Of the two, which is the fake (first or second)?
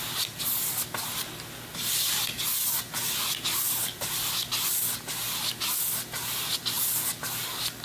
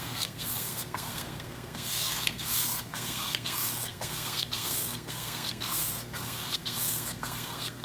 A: second